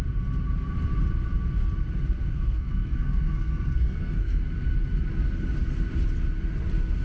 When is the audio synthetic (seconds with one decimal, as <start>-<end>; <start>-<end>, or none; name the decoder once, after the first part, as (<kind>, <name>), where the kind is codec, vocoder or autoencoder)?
2.3-4.4 (codec, SNAC)